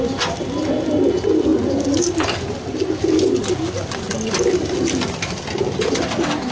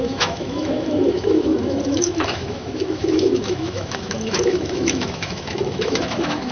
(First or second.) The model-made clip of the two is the second